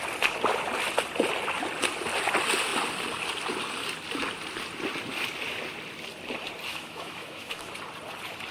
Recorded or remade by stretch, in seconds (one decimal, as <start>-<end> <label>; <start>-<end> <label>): 0.0-6.7 recorded; 6.7-7.7 remade; 7.7-8.5 recorded